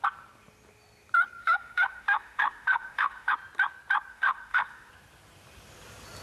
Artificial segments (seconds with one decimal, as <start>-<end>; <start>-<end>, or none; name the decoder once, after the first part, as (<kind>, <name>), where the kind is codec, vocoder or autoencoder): 1.4-3.3 (autoencoder, DAC-VAE); 4.1-4.9